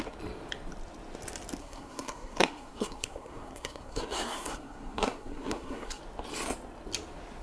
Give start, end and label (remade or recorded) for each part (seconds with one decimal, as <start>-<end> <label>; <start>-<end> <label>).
0.0-1.6 recorded; 1.6-6.0 remade; 6.0-7.4 recorded